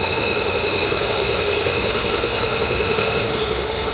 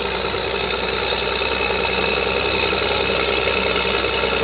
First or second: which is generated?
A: first